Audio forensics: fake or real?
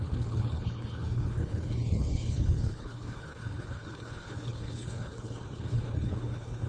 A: fake